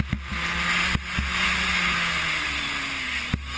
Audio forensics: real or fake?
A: real